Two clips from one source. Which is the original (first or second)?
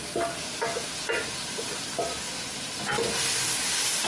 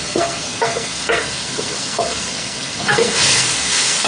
first